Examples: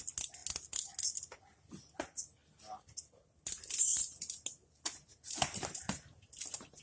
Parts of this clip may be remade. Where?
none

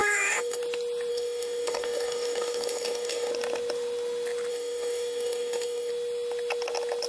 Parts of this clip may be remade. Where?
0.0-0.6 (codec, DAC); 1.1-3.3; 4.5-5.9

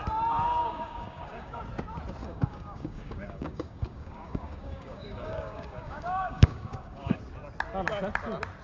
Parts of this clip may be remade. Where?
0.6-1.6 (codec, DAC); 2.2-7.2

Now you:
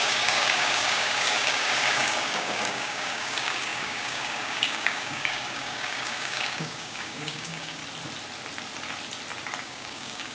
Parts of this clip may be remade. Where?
0.0-7.8 (codec, DAC); 9.6-10.3

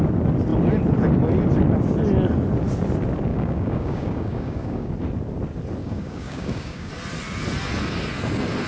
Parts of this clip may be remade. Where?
3.3-4.9 (codec, DAC); 5.8-6.9